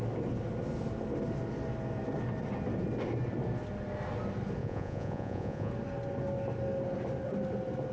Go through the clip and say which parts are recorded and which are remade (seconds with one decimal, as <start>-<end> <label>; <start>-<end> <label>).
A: 0.0-4.6 recorded; 4.6-5.7 remade; 5.7-7.9 recorded

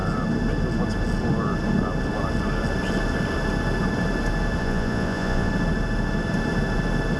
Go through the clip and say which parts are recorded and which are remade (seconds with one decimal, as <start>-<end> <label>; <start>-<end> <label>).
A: 0.0-4.6 recorded; 4.6-5.5 remade; 5.5-7.2 recorded

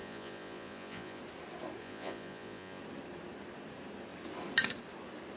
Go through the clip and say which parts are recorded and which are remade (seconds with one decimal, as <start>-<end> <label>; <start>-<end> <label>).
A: 0.0-1.2 remade; 1.2-1.8 recorded; 1.8-2.8 remade; 2.8-5.4 recorded

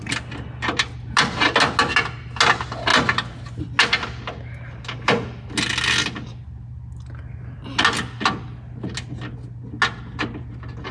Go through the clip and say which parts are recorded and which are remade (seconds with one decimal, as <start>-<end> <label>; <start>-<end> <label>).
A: 0.0-10.9 recorded

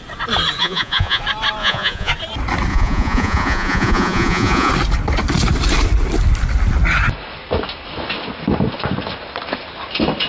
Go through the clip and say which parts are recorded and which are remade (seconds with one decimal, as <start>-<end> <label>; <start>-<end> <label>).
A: 0.0-0.6 recorded; 0.6-1.2 remade; 1.2-1.6 recorded; 1.6-2.1 remade; 2.1-2.7 recorded; 2.7-4.7 remade; 4.7-10.3 recorded

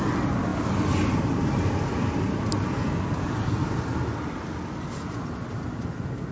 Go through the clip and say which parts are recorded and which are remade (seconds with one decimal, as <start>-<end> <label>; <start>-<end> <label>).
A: 0.0-6.3 recorded

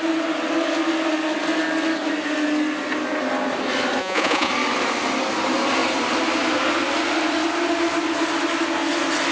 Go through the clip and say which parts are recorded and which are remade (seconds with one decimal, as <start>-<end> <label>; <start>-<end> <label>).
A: 0.0-4.0 recorded; 4.0-4.5 remade; 4.5-9.3 recorded